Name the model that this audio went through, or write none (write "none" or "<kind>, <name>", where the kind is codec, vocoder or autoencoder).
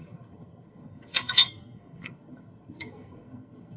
codec, SNAC